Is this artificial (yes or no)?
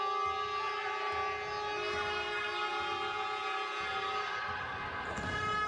no